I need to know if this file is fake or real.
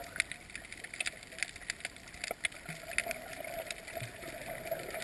real